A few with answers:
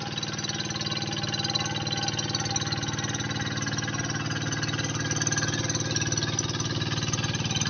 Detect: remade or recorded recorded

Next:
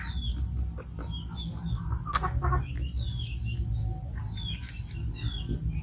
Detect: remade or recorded recorded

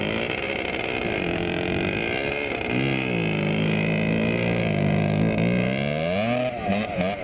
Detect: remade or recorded recorded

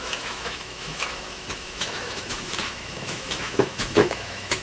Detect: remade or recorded remade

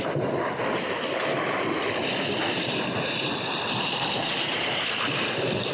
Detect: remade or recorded remade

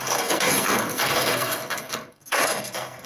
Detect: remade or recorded remade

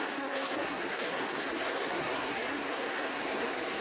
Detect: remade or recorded remade